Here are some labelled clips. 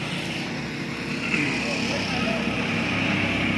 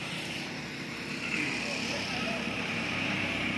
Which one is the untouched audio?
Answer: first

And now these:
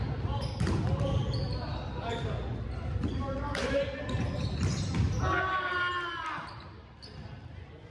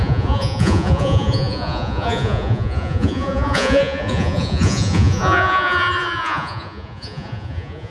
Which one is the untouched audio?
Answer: first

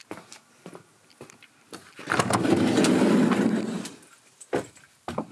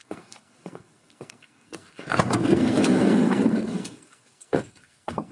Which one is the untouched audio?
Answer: first